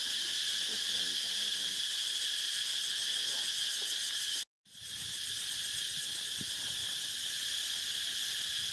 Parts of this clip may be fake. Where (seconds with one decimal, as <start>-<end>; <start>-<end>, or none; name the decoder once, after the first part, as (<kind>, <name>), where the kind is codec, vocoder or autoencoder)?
none